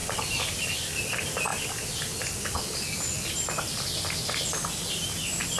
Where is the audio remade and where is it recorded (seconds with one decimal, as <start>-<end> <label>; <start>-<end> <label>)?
0.0-5.6 recorded